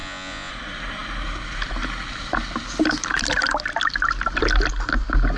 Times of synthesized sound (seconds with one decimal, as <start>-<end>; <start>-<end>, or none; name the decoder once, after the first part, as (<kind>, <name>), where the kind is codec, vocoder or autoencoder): 0.0-0.5 (vocoder, Vocos)